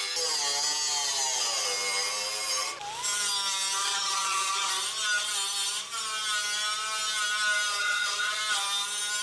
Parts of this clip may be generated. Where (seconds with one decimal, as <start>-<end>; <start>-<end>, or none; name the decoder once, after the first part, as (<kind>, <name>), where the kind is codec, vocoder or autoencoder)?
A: 3.8-4.7 (vocoder, Vocos); 7.8-8.4